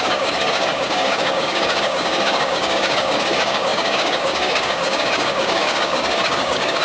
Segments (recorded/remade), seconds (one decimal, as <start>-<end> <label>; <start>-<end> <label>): 0.0-6.8 remade